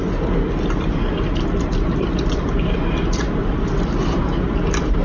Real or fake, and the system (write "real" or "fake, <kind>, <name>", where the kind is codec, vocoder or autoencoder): real